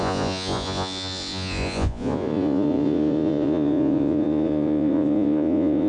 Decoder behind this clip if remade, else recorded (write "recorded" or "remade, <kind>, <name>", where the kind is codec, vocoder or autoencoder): remade, vocoder, Vocos